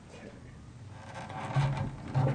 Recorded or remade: recorded